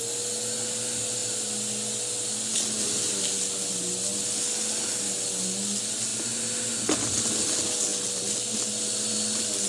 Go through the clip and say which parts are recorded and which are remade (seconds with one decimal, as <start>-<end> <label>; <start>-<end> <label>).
0.0-9.7 recorded